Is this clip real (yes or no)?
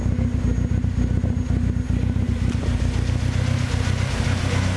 yes